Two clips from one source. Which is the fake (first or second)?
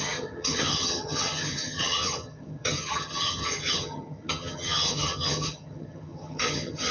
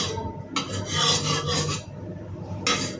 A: first